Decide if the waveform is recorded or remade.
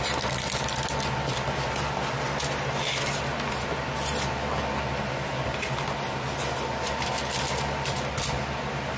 recorded